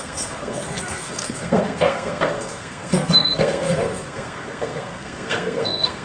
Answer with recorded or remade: remade